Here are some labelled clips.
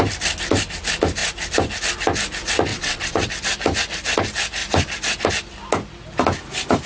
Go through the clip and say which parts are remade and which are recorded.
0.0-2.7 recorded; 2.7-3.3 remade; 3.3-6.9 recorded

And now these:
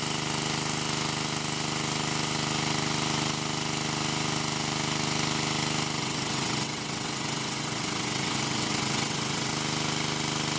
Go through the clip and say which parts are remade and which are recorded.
0.0-6.0 recorded; 6.0-9.5 remade; 9.5-10.6 recorded

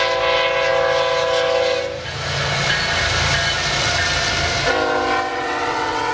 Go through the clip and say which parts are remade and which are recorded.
0.0-5.3 recorded; 5.3-6.1 remade

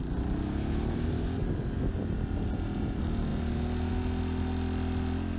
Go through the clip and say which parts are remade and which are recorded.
0.0-5.4 recorded

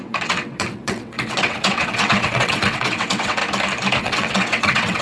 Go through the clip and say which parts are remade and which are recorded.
0.0-3.4 remade; 3.4-4.0 recorded; 4.0-5.0 remade

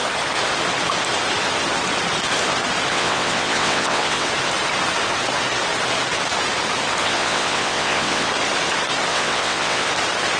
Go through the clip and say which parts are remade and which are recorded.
0.0-2.9 recorded; 2.9-4.3 remade; 4.3-7.0 recorded; 7.0-8.3 remade; 8.3-9.1 recorded; 9.1-9.9 remade; 9.9-10.4 recorded

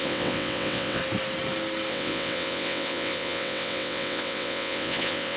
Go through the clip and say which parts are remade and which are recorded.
0.0-1.0 remade; 1.0-1.9 recorded; 1.9-5.4 remade

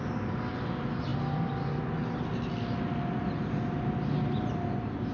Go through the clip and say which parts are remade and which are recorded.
0.0-5.1 recorded